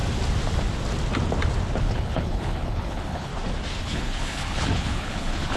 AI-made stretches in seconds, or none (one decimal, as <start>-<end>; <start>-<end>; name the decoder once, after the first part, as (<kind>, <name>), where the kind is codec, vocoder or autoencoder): 1.8-3.3 (codec, HILCodec); 3.8-5.6